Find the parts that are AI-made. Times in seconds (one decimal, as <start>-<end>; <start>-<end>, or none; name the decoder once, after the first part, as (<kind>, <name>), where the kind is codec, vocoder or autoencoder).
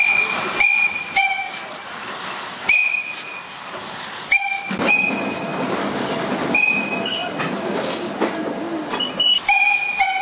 5.8-6.3 (codec, DAC)